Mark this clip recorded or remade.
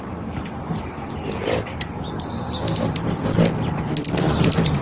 recorded